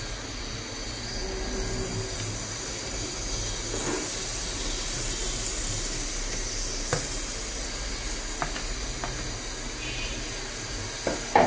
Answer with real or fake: real